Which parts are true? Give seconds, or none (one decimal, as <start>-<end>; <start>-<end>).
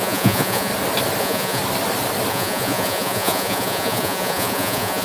0.7-1.2; 1.6-2.3